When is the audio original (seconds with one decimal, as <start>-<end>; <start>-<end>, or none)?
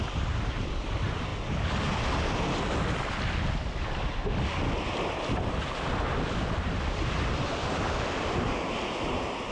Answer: 0.0-7.6; 8.3-9.5